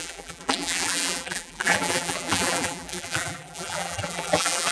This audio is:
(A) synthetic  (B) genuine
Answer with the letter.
A